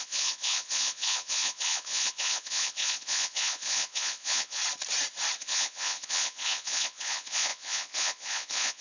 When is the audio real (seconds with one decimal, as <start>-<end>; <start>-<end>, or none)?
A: 4.6-5.4